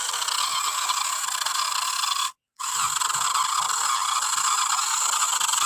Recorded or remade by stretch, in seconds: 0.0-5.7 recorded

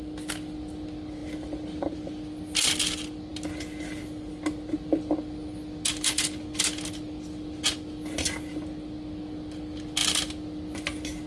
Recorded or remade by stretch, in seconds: 0.0-11.3 recorded